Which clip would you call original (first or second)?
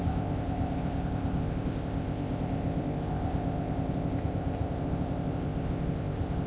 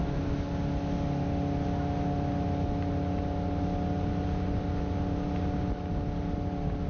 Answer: second